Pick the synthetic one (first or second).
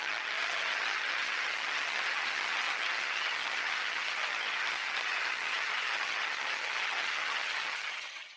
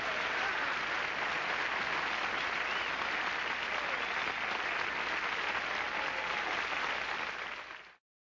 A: first